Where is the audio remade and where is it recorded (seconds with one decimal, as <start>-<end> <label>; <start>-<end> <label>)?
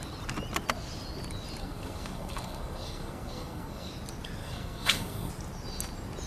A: 0.0-1.6 recorded; 1.6-3.9 remade; 3.9-4.4 recorded; 4.4-5.3 remade; 5.3-6.3 recorded